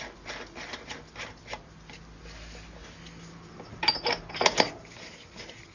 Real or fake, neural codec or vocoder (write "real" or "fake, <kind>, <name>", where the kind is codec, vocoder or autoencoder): real